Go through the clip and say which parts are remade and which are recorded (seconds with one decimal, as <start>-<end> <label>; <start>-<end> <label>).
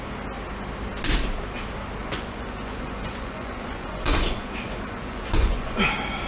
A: 0.0-2.0 recorded; 2.0-5.8 remade; 5.8-6.3 recorded